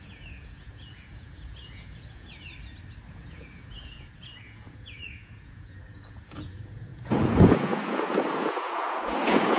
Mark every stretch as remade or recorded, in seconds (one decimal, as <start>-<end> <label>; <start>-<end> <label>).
0.0-2.5 remade; 2.5-3.1 recorded; 3.1-9.6 remade